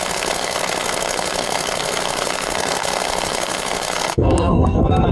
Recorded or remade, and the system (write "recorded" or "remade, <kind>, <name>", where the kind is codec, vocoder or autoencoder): remade, codec, SNAC